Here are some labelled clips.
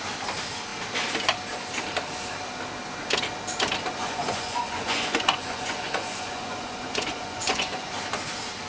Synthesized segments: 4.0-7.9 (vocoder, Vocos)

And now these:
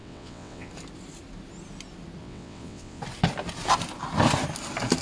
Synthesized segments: 0.0-0.7 (vocoder, WaveNeXt); 2.2-3.0

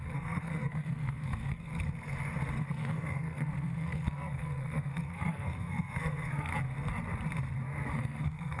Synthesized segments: 0.0-1.7 (codec, SNAC); 2.5-6.5; 7.9-8.6